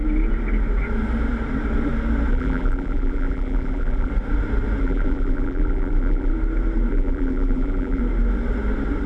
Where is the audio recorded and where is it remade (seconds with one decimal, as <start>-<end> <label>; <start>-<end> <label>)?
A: 0.0-2.3 recorded; 2.3-4.1 remade; 4.1-4.8 recorded; 4.8-6.3 remade; 6.3-6.9 recorded; 6.9-8.0 remade; 8.0-9.1 recorded